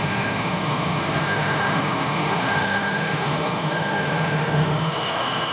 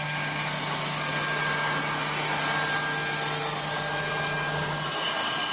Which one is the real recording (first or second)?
second